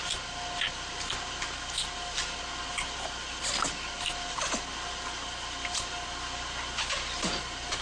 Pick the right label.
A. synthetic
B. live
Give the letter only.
B